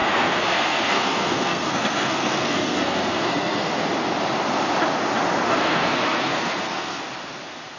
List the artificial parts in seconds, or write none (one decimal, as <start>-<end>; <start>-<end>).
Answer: 0.0-3.7; 5.5-7.0

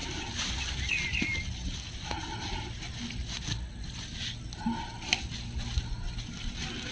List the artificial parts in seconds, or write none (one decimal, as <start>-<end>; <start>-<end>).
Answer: none

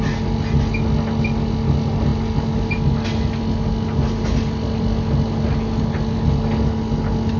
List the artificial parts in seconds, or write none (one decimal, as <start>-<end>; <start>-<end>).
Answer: none

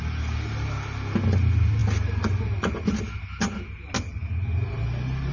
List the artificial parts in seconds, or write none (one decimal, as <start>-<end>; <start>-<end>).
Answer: none

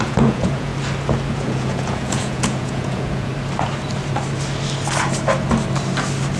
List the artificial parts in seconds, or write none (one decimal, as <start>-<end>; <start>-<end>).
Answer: 0.0-0.7; 1.4-3.3

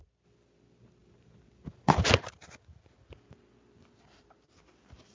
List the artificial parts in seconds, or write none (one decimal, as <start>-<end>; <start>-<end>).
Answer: 1.0-2.0